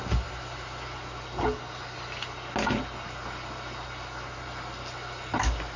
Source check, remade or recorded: recorded